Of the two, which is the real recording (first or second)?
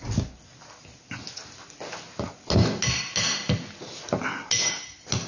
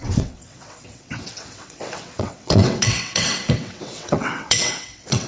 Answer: first